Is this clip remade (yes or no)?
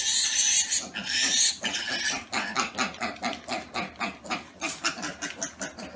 no